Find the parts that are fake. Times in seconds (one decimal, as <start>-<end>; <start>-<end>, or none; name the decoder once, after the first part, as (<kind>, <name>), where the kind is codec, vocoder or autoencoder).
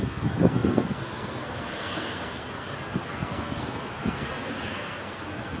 0.0-5.6 (codec, SNAC)